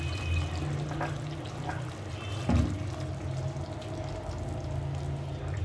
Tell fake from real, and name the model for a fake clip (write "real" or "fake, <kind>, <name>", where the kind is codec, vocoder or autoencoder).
real